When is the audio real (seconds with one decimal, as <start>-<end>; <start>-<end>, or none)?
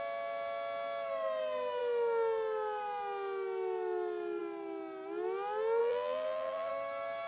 0.0-5.8; 6.7-7.3